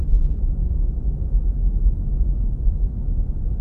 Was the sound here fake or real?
real